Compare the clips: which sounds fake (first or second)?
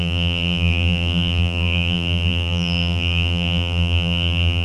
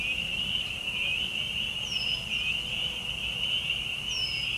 first